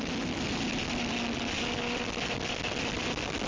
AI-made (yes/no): no